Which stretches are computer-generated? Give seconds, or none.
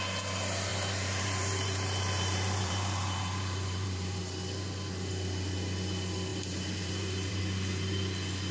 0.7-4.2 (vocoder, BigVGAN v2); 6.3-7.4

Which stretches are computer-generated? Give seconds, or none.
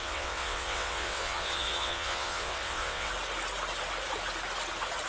0.0-3.1 (vocoder, WaveNeXt)